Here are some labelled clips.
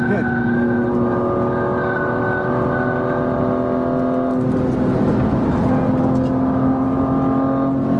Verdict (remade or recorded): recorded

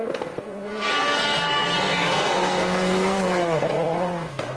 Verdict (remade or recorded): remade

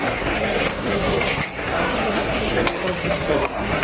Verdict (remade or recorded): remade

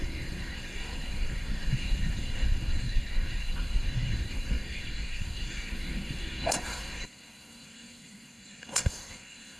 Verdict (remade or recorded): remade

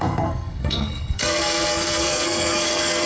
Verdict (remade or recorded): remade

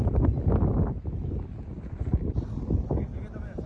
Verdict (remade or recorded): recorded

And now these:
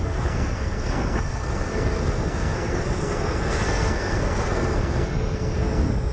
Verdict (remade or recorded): remade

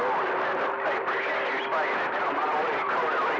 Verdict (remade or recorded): recorded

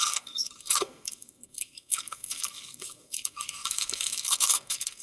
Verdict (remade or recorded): remade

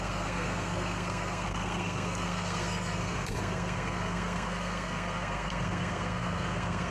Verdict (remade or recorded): remade